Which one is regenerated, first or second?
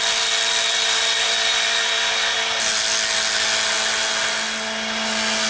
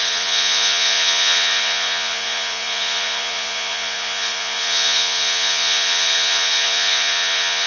second